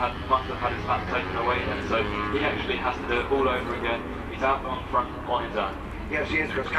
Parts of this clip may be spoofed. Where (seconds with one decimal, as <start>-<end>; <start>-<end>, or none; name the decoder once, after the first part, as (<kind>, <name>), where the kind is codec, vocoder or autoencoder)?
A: 4.1-5.0 (autoencoder, DAC-VAE)